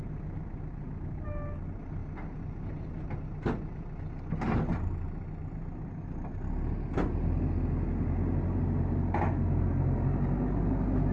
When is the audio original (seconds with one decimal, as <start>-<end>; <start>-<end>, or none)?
0.0-11.1